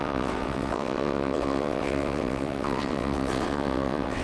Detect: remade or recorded remade